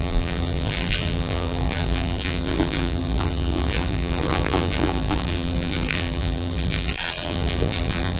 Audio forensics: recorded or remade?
remade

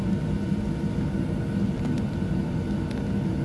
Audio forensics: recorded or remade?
recorded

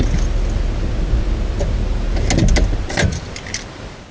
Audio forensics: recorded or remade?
recorded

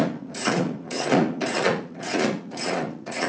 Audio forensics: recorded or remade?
remade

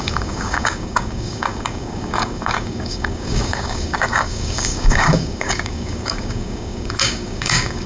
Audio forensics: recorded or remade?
remade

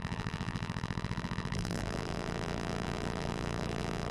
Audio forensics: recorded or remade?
remade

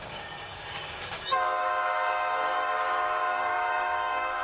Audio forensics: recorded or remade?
remade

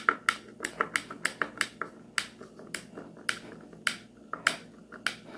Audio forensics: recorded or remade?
recorded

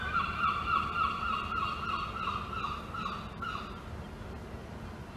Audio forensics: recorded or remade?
recorded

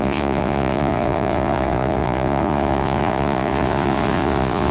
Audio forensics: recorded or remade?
remade